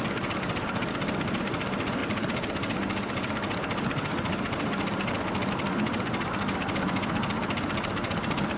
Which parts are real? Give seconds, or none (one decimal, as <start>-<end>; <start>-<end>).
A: 0.0-8.6